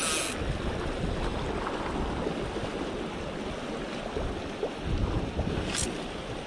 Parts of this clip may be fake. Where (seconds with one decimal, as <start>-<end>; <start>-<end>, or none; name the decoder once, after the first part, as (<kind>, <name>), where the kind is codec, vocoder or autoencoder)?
none